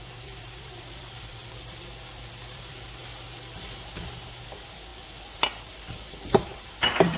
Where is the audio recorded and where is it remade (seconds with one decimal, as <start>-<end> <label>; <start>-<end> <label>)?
0.0-3.0 remade; 3.0-4.4 recorded; 4.4-4.9 remade; 4.9-5.7 recorded; 5.7-7.2 remade